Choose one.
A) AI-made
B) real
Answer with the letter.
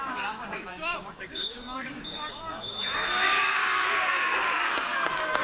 A